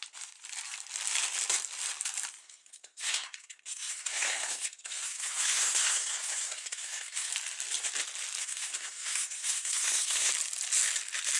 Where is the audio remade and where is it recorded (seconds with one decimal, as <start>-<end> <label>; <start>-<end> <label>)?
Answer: 0.0-2.4 recorded; 2.4-7.3 remade; 7.3-8.4 recorded; 8.4-10.3 remade; 10.3-11.4 recorded